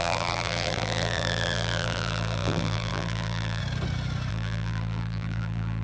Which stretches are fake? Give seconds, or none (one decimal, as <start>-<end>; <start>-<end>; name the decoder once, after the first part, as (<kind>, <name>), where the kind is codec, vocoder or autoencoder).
0.0-3.6 (vocoder, BigVGAN v2); 4.3-5.8